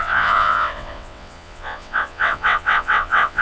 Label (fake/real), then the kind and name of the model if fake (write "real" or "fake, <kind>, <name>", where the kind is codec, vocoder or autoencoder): fake, vocoder, WaveNeXt